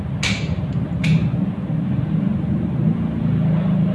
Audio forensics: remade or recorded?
recorded